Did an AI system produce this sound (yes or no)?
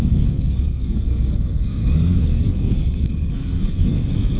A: yes